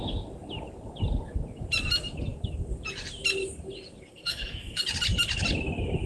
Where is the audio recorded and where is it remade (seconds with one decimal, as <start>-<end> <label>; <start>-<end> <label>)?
0.0-4.1 recorded; 4.1-4.8 remade; 4.8-6.1 recorded